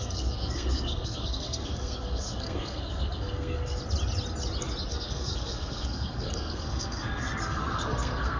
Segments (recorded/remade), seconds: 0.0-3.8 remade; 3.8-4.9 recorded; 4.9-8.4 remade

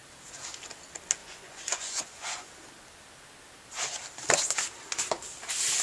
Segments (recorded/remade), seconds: 0.0-1.2 recorded; 1.2-2.5 remade; 2.5-5.8 recorded

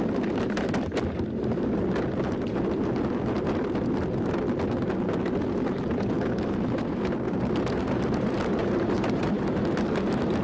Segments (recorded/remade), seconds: 0.0-8.6 recorded; 8.6-9.3 remade; 9.3-10.4 recorded

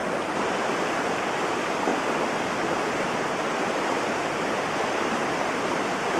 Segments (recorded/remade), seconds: 0.0-6.2 recorded

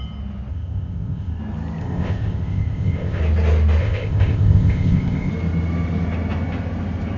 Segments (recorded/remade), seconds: 0.0-0.5 recorded; 0.5-1.4 remade; 1.4-1.8 recorded; 1.8-3.2 remade; 3.2-3.8 recorded; 3.8-5.3 remade; 5.3-7.2 recorded

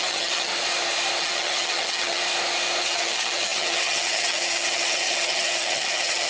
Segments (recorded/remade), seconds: 0.0-0.5 remade; 0.5-1.2 recorded; 1.2-2.2 remade; 2.2-2.8 recorded; 2.8-6.3 remade

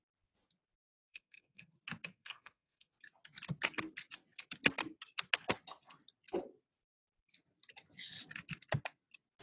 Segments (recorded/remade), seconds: 0.0-1.0 recorded; 1.0-1.7 remade; 1.7-2.1 recorded; 2.1-2.9 remade; 2.9-9.4 recorded